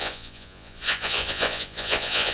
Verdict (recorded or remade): remade